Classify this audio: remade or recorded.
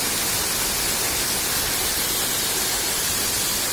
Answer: recorded